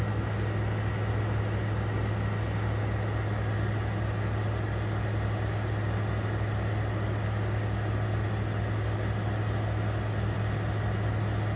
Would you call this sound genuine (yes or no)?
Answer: yes